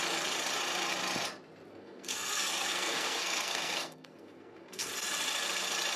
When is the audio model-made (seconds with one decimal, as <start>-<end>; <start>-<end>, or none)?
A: 1.7-4.9